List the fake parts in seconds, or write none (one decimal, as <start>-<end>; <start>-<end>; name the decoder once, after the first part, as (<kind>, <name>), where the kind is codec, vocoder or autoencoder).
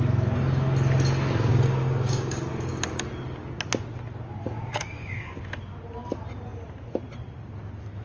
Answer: 1.5-2.5 (codec, DAC); 4.7-5.4